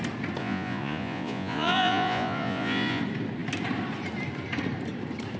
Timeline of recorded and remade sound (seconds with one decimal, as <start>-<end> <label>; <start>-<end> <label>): 0.0-0.4 recorded; 0.4-3.0 remade; 3.0-5.4 recorded